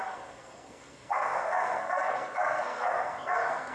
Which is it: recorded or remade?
remade